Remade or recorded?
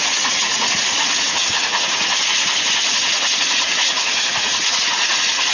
remade